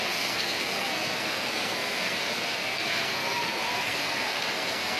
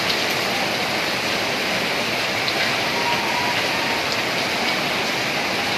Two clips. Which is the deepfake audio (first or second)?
first